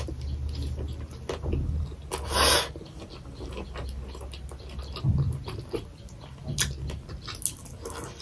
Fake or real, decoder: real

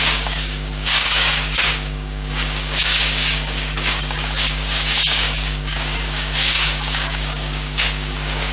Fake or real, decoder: fake, codec, DAC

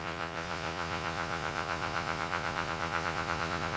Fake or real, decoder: fake, vocoder, Vocos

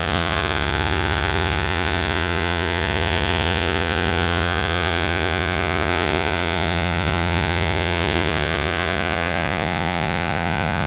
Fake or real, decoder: fake, vocoder, Vocos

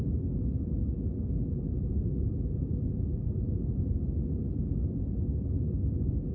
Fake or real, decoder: real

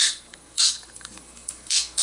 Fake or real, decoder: fake, codec, SNAC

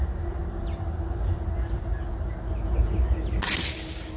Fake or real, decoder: real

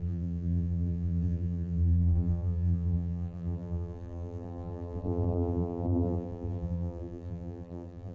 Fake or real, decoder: fake, vocoder, BigVGAN v2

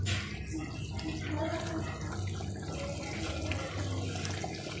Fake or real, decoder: real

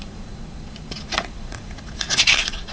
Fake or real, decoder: fake, vocoder, Vocos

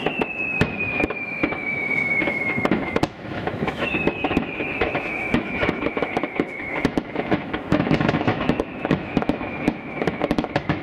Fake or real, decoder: fake, autoencoder, DAC-VAE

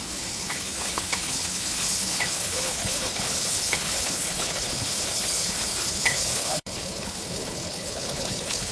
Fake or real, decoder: fake, codec, HILCodec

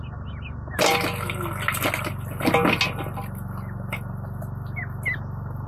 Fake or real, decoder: real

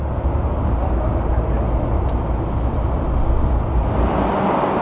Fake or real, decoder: real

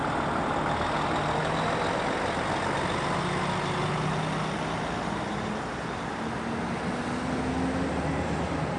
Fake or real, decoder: real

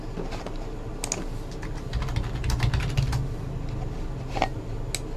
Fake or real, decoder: real